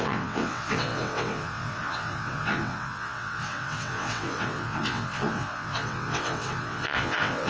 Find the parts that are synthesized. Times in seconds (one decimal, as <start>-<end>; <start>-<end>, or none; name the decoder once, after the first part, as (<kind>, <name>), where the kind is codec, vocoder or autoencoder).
0.0-7.5 (vocoder, WaveNeXt)